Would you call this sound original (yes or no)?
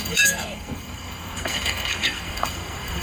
no